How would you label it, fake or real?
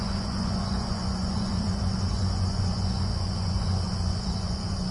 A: fake